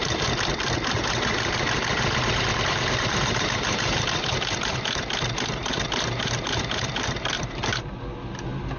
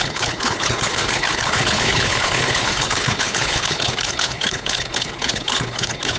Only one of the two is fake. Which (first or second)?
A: second